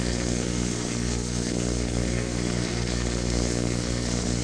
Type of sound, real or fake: fake